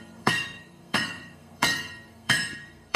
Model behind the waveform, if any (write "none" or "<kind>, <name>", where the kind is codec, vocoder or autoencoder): codec, SNAC